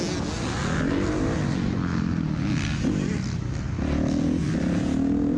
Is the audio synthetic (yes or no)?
no